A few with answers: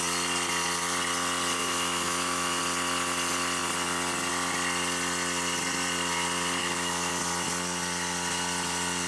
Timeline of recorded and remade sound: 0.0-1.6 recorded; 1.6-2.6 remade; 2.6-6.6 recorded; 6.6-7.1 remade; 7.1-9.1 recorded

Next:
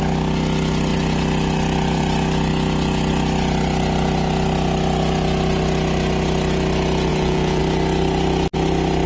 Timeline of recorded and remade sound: 0.0-7.1 recorded; 7.1-7.6 remade; 7.6-9.1 recorded

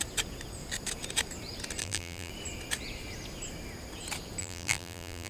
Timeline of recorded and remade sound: 0.0-1.8 recorded; 1.8-2.3 remade; 2.3-4.4 recorded; 4.4-5.3 remade

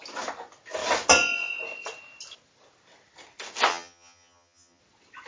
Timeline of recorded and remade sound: 0.0-3.7 recorded; 3.7-4.8 remade; 4.8-5.3 recorded

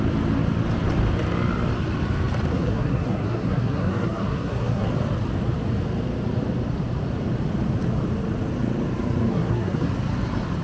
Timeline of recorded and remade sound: 0.0-2.5 recorded; 2.5-4.9 remade; 4.9-9.3 recorded; 9.3-9.9 remade; 9.9-10.6 recorded

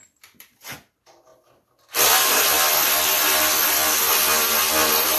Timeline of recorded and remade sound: 0.0-1.3 remade; 1.3-4.4 recorded; 4.4-5.2 remade

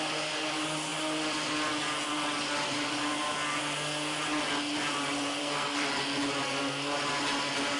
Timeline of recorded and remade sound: 0.0-5.4 recorded; 5.4-5.9 remade; 5.9-7.8 recorded

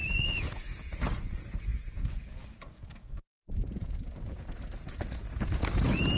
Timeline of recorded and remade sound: 0.0-6.2 remade